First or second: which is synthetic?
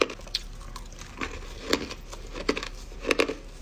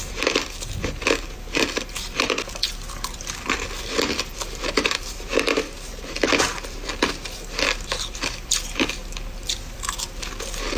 second